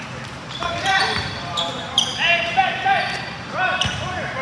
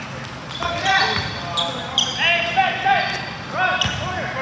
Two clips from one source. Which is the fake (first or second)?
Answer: first